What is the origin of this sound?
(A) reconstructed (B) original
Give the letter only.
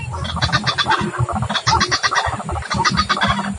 B